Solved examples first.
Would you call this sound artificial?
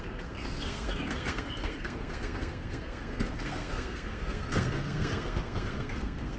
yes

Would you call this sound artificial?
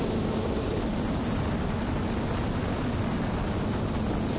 no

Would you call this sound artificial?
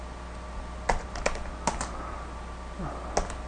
no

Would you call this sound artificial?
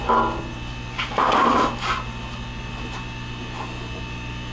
no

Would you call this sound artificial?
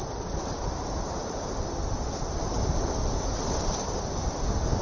no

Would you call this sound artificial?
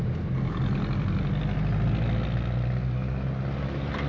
no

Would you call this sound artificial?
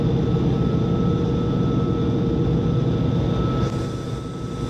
no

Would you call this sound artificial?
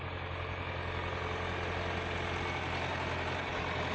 no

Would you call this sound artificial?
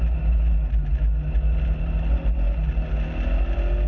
no